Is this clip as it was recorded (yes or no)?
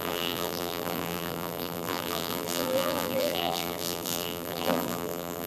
no